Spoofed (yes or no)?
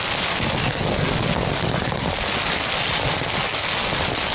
no